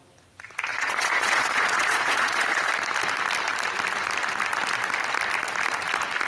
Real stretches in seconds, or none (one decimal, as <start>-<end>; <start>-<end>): 0.0-0.7; 2.7-6.3